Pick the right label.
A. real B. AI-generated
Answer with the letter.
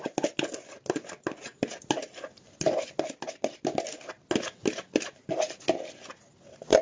A